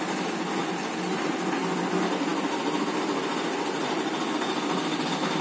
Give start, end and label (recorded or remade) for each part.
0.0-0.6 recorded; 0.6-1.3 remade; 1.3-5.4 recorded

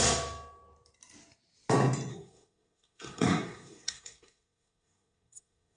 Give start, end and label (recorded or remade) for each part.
0.0-2.1 recorded; 2.1-5.8 remade